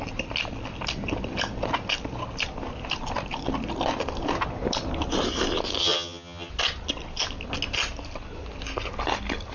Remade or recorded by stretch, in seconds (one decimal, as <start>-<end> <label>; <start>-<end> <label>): 0.0-5.8 recorded; 5.8-6.5 remade; 6.5-9.5 recorded